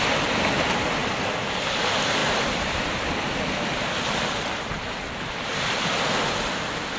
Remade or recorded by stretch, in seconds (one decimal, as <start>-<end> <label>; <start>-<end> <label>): 0.0-1.0 recorded; 1.0-1.5 remade; 1.5-2.2 recorded; 2.2-6.0 remade; 6.0-7.0 recorded